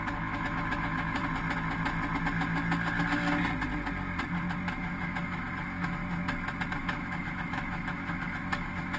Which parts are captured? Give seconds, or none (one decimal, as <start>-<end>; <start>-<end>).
1.2-4.8; 6.0-6.8